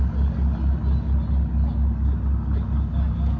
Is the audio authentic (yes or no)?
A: yes